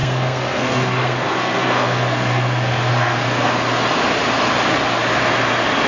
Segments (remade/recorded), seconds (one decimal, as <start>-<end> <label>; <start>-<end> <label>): 0.0-3.5 remade; 3.5-5.9 recorded